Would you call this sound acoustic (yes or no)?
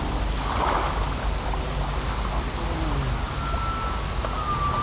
yes